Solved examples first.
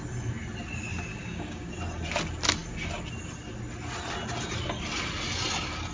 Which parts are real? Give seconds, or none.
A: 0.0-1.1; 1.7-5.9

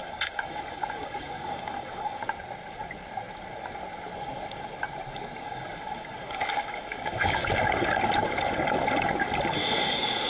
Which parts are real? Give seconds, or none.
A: 2.2-5.4; 7.4-9.8

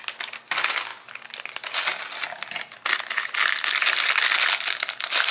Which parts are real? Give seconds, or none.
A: 0.0-5.3

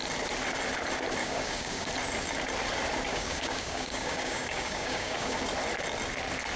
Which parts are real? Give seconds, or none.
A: 0.0-1.2; 1.9-3.1; 5.4-6.6